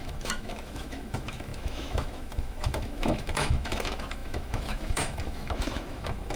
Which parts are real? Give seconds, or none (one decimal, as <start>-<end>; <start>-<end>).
none